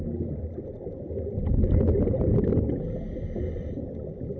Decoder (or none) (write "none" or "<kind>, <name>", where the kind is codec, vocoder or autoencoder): none